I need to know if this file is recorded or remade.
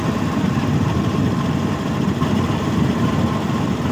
remade